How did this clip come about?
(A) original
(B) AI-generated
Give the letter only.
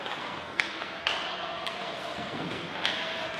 B